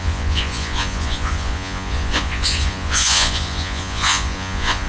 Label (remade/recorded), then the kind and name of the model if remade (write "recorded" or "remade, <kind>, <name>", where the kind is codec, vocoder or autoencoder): remade, vocoder, Vocos